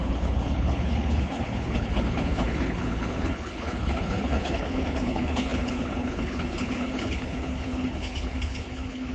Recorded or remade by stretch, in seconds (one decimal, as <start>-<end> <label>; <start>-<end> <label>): 0.0-9.1 remade